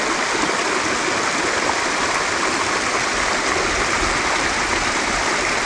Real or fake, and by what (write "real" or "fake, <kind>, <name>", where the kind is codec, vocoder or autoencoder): real